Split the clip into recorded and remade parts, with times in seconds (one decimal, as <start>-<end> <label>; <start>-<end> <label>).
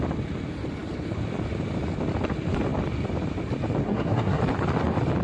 0.0-3.8 recorded; 3.8-4.4 remade; 4.4-5.2 recorded